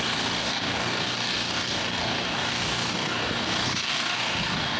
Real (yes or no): no